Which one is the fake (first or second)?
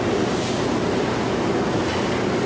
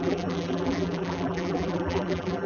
second